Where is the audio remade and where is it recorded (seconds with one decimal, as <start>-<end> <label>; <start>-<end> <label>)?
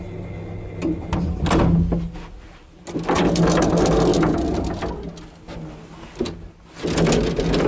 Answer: 0.0-7.7 recorded